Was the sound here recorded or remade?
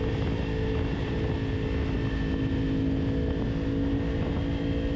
recorded